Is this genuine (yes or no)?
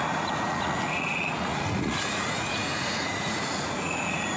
no